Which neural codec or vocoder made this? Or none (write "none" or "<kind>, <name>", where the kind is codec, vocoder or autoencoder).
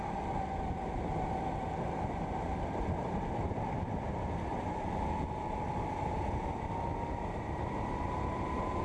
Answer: none